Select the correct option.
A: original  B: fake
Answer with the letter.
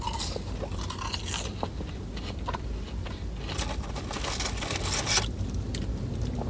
A